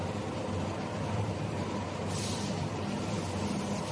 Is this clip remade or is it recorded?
recorded